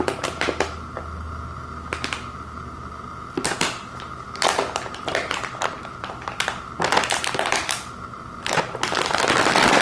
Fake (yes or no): no